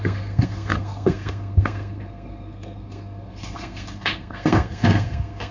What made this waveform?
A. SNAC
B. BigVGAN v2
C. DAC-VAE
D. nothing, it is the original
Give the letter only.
A